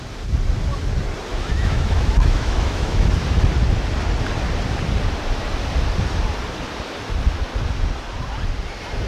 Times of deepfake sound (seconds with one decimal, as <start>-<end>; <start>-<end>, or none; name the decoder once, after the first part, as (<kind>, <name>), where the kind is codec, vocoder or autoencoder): 1.3-3.1 (autoencoder, DAC-VAE)